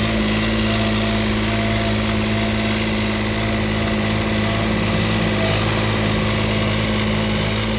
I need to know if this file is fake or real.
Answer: real